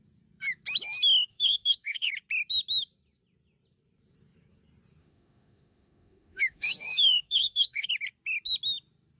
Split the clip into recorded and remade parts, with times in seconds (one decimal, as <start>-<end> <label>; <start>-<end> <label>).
0.0-1.3 recorded; 1.3-2.1 remade; 2.1-5.0 recorded; 5.0-7.9 remade; 7.9-9.2 recorded